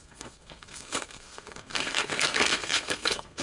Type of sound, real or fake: fake